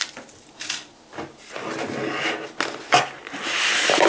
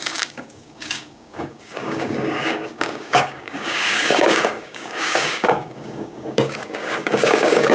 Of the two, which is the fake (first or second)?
second